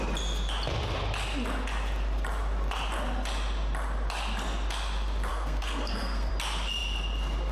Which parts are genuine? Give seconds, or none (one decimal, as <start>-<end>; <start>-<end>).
0.0-5.3; 6.3-7.5